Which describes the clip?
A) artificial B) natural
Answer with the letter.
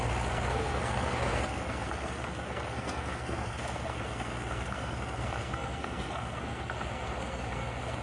A